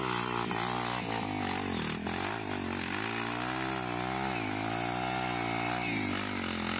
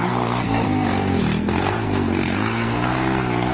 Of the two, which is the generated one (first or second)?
second